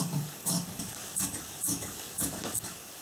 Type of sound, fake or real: fake